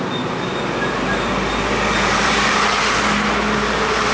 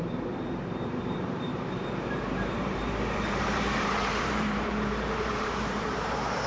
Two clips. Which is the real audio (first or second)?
first